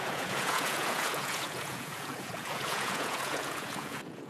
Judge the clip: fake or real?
fake